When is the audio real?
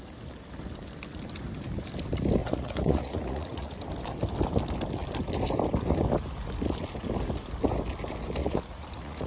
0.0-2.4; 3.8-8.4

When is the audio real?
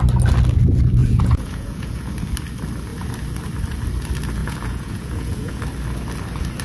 0.0-1.0; 2.1-4.4; 5.6-6.6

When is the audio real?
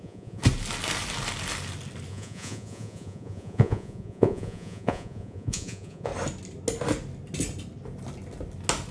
0.4-2.1; 6.1-8.9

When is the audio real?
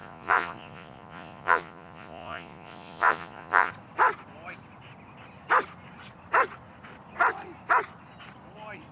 3.7-8.9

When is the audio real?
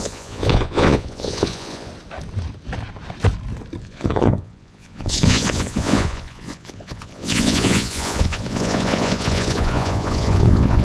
1.9-3.8